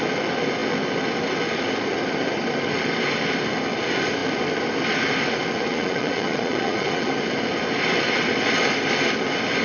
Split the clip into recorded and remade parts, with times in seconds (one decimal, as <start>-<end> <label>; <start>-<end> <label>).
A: 0.0-5.7 recorded; 5.7-7.1 remade; 7.1-9.6 recorded